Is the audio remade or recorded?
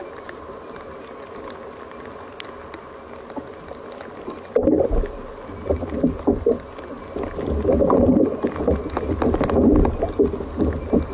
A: recorded